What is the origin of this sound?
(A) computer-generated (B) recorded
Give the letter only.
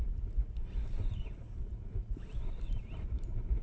B